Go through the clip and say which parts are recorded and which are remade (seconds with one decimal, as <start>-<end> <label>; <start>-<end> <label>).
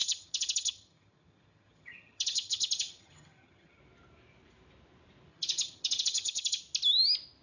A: 0.0-3.8 remade; 3.8-5.3 recorded; 5.3-6.6 remade; 6.6-7.4 recorded